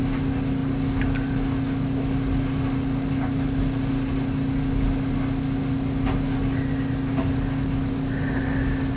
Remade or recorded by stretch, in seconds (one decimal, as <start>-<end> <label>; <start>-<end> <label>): 0.0-9.0 recorded

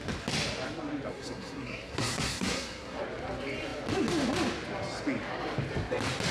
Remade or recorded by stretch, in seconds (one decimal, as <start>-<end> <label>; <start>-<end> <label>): 0.0-1.1 recorded; 1.1-3.0 remade; 3.0-6.3 recorded